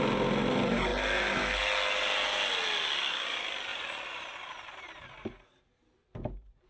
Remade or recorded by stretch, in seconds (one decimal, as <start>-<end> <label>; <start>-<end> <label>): 0.0-6.7 recorded